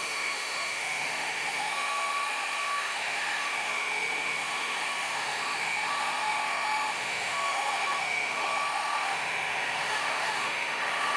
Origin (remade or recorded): remade